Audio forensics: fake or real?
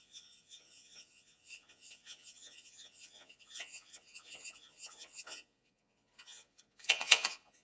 fake